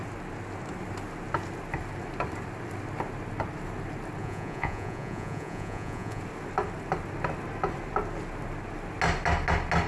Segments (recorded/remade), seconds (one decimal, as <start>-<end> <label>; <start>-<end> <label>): 0.0-4.2 recorded; 4.2-6.2 remade; 6.2-9.9 recorded

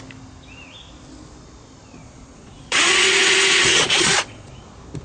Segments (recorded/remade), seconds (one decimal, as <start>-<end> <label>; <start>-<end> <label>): 0.0-2.0 recorded; 2.0-4.5 remade; 4.5-5.0 recorded

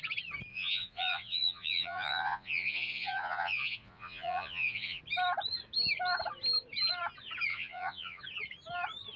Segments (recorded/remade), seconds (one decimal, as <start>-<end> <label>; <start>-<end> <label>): 0.0-0.5 recorded; 0.5-5.0 remade; 5.0-7.5 recorded; 7.5-8.2 remade; 8.2-9.2 recorded

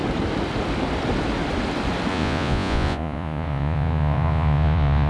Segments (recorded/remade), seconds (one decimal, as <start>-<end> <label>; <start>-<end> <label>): 0.0-2.1 recorded; 2.1-5.1 remade

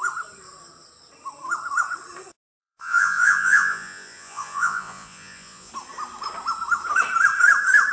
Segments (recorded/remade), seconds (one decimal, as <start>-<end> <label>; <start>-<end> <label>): 0.0-2.6 recorded; 2.6-5.7 remade; 5.7-7.9 recorded

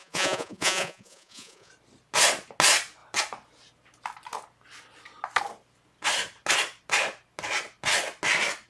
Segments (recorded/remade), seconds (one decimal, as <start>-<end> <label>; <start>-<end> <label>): 0.0-1.7 remade; 1.7-8.7 recorded